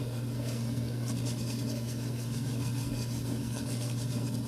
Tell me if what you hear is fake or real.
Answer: fake